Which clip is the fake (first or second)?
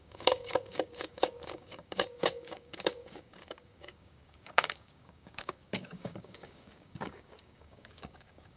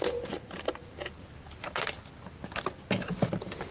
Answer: first